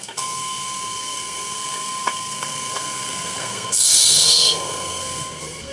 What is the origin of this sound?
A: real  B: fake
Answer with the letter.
B